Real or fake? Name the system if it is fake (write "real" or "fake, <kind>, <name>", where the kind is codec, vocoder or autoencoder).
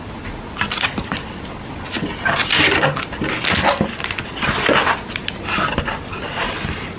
real